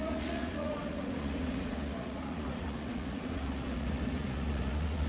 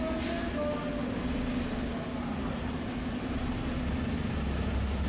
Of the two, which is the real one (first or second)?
second